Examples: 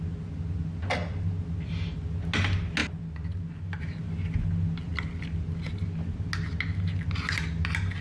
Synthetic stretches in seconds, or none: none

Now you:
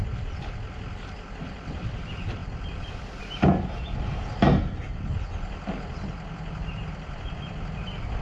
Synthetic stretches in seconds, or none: none